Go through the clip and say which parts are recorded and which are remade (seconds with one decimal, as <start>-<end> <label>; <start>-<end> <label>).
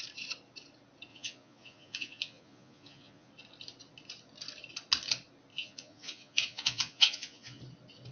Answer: 0.0-1.1 recorded; 1.1-3.3 remade; 3.3-5.5 recorded; 5.5-7.6 remade; 7.6-8.1 recorded